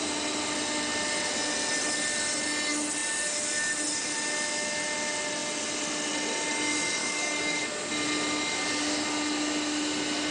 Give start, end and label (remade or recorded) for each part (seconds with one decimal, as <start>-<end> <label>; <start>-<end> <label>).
0.0-7.0 recorded; 7.0-7.6 remade; 7.6-10.3 recorded